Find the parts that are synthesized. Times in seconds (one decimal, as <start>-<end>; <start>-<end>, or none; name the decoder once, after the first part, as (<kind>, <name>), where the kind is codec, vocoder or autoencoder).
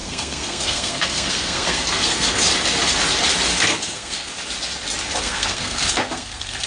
0.0-2.5 (codec, SNAC); 3.5-4.3; 5.2-6.7